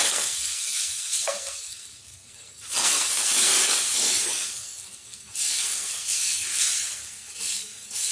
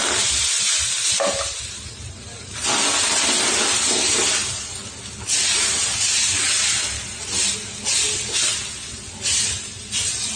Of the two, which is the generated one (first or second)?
first